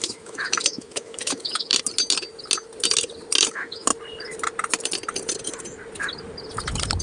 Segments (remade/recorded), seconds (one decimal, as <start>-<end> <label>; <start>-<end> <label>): 0.0-1.7 remade; 1.7-3.5 recorded; 3.5-3.9 remade; 3.9-7.0 recorded

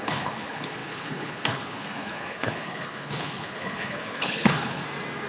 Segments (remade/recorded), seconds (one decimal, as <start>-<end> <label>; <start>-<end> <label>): 0.0-4.8 remade; 4.8-5.3 recorded

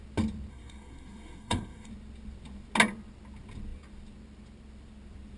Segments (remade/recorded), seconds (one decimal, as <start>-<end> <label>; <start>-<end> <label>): 0.0-0.5 recorded; 0.5-1.9 remade; 1.9-5.4 recorded

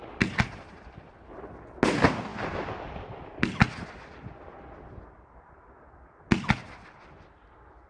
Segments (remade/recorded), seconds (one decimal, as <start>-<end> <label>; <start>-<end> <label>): 0.0-7.9 recorded

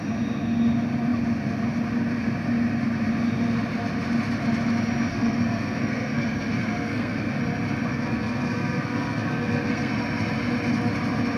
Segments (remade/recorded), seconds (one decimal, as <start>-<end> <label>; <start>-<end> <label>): 0.0-5.1 recorded; 5.1-7.4 remade; 7.4-7.9 recorded; 7.9-9.9 remade; 9.9-11.4 recorded